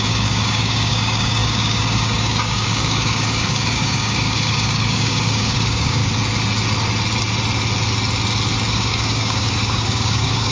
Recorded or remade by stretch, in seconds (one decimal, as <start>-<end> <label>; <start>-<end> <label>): 0.0-6.0 remade; 6.0-8.7 recorded; 8.7-10.5 remade